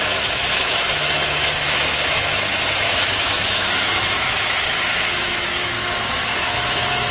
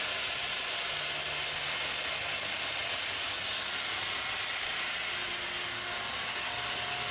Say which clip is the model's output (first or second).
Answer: first